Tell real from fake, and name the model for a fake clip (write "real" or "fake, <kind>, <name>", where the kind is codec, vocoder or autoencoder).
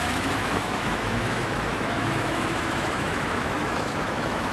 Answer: fake, autoencoder, DAC-VAE